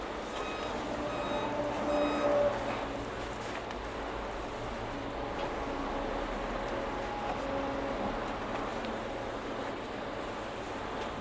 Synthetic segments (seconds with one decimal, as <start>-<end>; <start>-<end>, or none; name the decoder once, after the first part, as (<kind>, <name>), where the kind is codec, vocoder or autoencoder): none